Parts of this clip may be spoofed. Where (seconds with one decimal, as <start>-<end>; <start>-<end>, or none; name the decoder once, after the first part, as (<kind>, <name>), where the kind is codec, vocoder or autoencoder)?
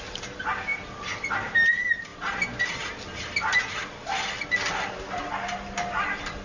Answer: none